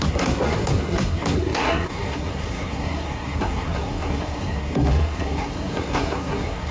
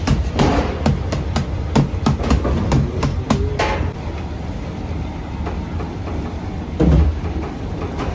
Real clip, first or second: second